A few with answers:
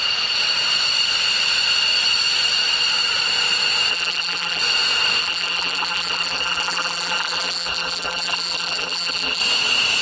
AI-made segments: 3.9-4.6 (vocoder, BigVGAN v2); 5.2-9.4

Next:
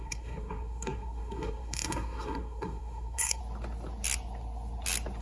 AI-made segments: 0.0-3.4 (codec, SNAC)

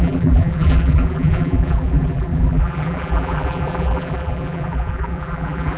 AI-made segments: 0.0-5.8 (vocoder, BigVGAN v2)

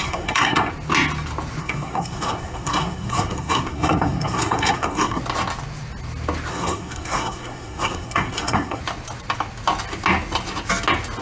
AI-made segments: 0.0-0.7 (codec, SNAC); 1.6-5.2; 6.5-8.8